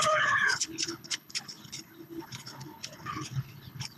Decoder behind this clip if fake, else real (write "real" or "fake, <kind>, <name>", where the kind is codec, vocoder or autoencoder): fake, codec, HILCodec